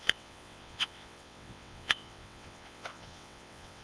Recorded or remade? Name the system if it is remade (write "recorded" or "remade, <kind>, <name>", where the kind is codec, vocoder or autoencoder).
remade, vocoder, WaveNeXt